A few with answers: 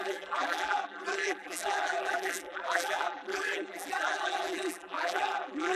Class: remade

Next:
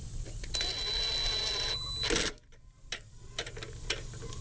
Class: recorded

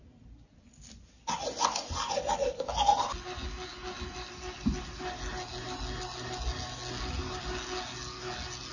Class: recorded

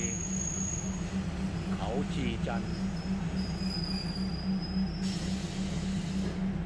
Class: recorded